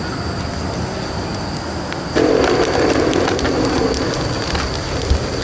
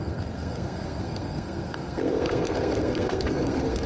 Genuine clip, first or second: first